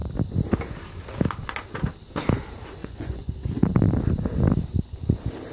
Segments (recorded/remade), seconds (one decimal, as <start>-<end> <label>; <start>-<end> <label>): 0.0-2.8 recorded; 2.8-3.3 remade; 3.3-5.5 recorded

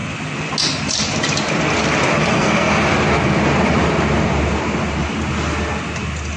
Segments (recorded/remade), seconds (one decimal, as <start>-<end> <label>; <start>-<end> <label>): 0.0-2.2 recorded; 2.2-2.8 remade; 2.8-6.4 recorded

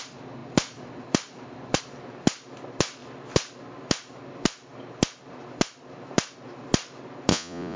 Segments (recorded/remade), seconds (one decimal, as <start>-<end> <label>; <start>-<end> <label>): 0.0-7.3 recorded; 7.3-7.8 remade

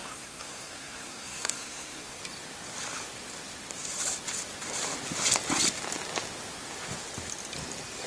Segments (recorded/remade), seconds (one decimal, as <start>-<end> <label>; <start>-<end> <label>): 0.0-2.2 remade; 2.2-8.1 recorded